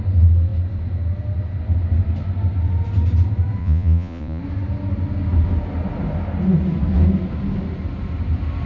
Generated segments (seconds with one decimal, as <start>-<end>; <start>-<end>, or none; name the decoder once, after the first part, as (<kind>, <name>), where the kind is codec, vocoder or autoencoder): 3.6-4.4 (vocoder, Vocos)